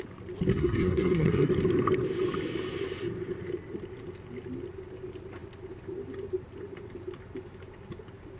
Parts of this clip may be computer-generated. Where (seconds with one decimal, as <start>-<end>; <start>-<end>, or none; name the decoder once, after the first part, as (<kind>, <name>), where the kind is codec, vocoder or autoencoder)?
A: 0.5-1.5 (codec, SNAC)